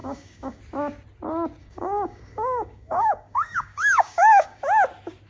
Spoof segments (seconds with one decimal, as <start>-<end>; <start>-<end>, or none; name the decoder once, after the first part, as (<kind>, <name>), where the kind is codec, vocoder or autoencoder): 0.0-0.6 (codec, DAC); 1.6-4.6